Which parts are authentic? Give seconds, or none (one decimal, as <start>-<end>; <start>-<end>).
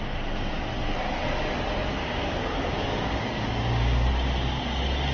0.0-2.0; 4.1-5.1